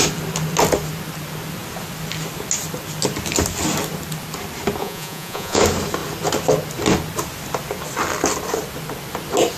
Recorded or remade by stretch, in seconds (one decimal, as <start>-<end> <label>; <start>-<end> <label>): 0.0-4.8 recorded; 4.8-5.6 remade; 5.6-9.6 recorded